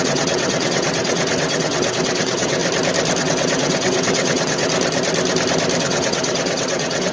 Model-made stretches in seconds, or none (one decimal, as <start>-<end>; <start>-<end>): 0.0-2.6; 3.2-4.7; 5.8-7.1